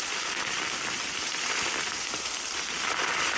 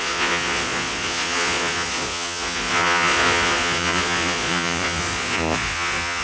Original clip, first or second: first